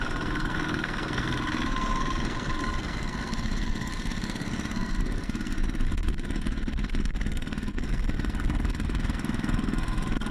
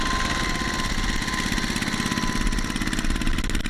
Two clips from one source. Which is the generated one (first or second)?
first